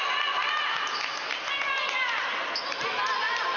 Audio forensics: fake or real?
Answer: real